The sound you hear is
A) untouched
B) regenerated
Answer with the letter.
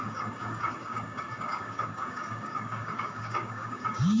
B